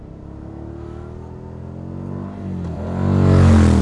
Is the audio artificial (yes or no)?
no